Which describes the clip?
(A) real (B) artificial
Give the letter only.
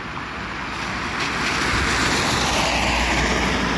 A